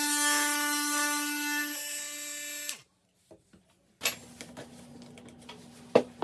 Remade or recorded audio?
recorded